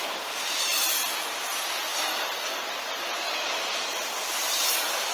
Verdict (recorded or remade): recorded